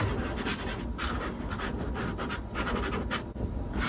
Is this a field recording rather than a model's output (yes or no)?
yes